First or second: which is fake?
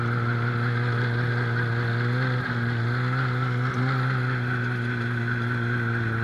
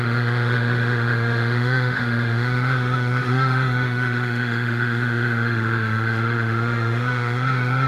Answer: second